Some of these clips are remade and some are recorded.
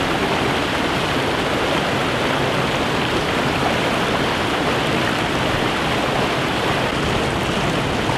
recorded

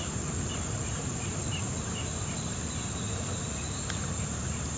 recorded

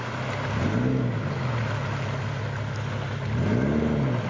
recorded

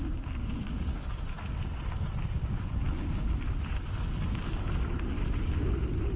recorded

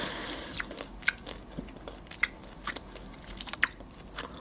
recorded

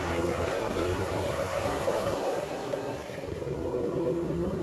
remade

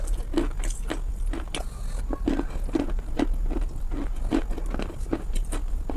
recorded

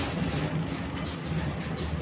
recorded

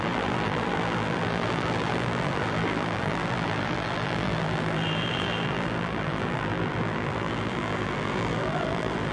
remade